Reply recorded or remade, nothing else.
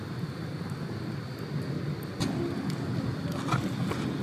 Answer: recorded